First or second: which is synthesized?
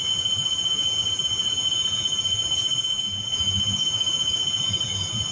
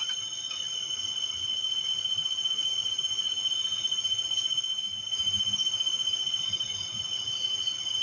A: first